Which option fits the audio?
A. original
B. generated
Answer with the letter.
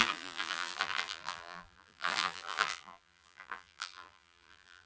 B